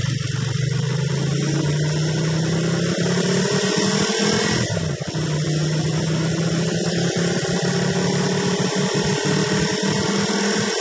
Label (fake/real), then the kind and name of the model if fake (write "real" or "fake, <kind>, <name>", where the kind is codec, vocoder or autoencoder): real